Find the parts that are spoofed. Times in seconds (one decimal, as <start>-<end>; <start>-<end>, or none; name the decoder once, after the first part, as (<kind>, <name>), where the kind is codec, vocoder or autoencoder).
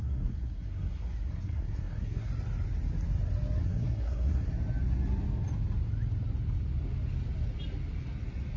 0.0-2.3 (codec, SNAC); 3.6-4.5